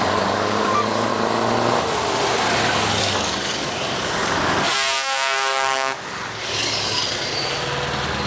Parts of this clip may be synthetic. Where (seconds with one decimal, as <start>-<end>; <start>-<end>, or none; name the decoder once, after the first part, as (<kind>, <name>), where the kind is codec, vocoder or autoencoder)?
0.0-1.1 (codec, DAC); 3.0-7.0